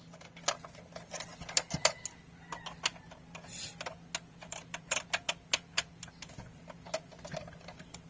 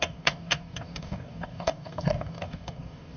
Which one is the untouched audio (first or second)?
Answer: first